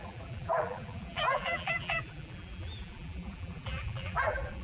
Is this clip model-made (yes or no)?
yes